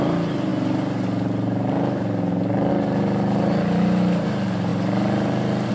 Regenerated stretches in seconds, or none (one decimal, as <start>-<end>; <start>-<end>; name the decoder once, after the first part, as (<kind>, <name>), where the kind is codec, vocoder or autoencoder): none